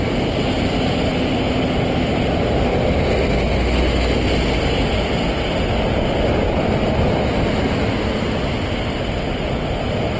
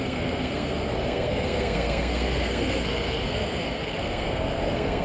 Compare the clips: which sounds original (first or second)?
first